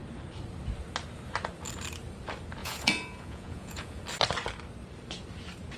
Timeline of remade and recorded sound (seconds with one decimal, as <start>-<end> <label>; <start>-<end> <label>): 0.0-2.6 recorded; 2.6-4.0 remade; 4.0-5.8 recorded